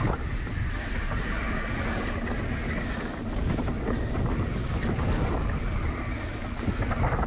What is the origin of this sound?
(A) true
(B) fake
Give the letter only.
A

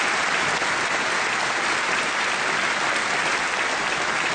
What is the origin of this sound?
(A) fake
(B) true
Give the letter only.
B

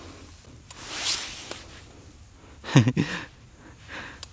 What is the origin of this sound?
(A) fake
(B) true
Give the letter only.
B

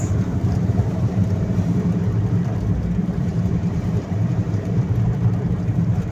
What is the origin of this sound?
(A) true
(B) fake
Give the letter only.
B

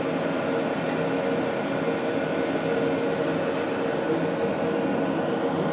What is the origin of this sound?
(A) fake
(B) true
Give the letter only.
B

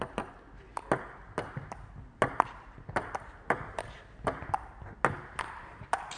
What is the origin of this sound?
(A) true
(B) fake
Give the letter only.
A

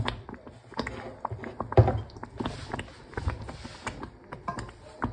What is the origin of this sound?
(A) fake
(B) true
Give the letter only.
B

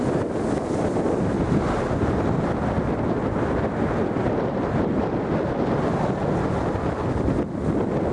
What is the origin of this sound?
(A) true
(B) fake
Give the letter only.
A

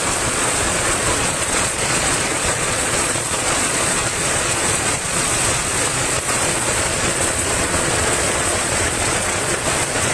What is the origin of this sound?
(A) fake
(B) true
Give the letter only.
A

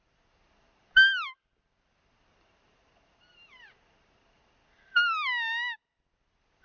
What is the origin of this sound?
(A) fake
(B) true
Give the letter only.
B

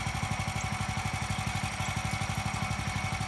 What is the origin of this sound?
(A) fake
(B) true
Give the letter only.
B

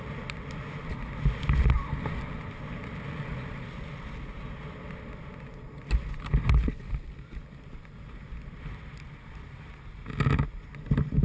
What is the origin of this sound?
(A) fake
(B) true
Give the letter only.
B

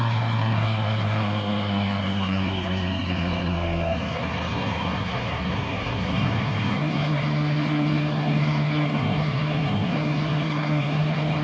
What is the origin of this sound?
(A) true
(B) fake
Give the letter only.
B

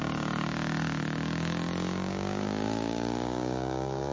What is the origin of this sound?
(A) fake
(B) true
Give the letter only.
A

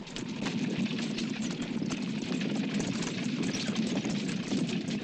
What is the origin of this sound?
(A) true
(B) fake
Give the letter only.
A